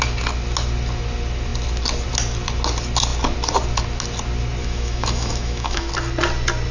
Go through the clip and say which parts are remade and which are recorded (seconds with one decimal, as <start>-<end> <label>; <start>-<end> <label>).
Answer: 0.0-4.6 recorded; 4.6-5.9 remade; 5.9-6.7 recorded